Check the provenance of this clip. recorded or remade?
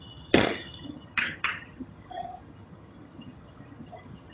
remade